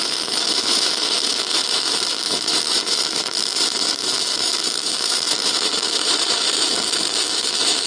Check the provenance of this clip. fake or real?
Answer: fake